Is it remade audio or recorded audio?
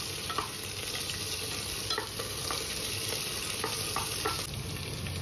recorded